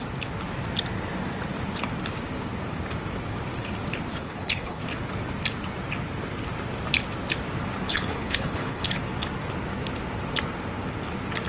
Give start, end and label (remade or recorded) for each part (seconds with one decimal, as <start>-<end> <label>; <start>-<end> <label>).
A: 0.0-4.1 recorded; 4.1-4.8 remade; 4.8-7.9 recorded; 7.9-9.0 remade; 9.0-11.5 recorded